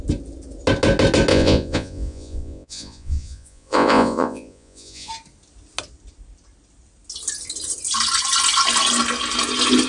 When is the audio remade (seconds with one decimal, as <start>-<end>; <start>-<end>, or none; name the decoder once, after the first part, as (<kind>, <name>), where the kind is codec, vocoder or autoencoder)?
1.3-5.1 (vocoder, Vocos)